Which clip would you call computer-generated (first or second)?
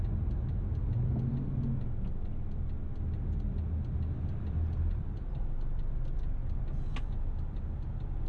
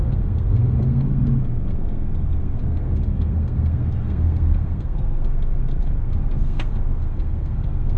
second